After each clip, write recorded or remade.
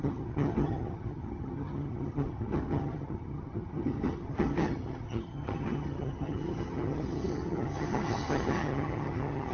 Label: remade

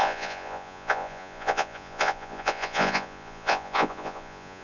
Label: remade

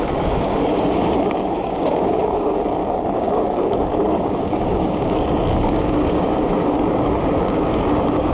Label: remade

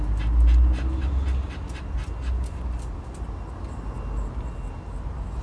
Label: recorded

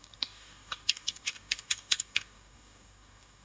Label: remade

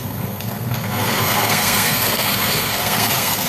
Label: remade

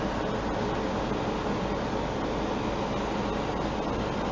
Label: recorded